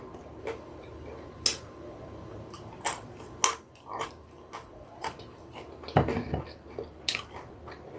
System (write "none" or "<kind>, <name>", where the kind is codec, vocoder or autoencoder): none